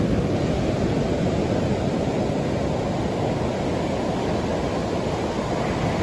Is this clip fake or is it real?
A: real